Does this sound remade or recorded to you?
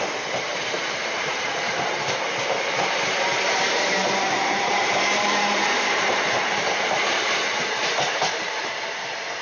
remade